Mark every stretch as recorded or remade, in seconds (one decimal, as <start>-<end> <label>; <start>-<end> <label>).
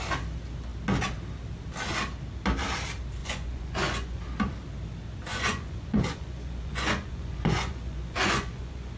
0.0-3.2 recorded; 3.2-4.2 remade; 4.2-5.3 recorded; 5.3-9.0 remade